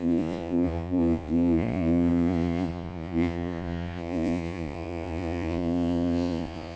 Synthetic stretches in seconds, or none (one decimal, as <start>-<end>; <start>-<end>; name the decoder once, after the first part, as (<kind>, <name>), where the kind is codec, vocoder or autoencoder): 0.0-6.8 (vocoder, Vocos)